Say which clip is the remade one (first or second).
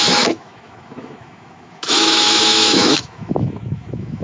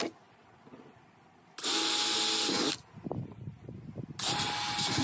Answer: first